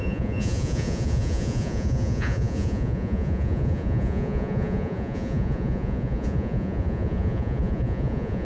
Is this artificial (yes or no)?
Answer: yes